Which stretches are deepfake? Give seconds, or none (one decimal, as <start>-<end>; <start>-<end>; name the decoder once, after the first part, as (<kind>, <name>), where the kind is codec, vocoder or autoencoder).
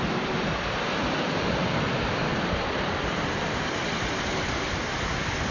none